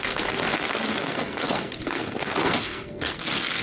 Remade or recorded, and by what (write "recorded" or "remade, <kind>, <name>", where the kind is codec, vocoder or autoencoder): remade, codec, SNAC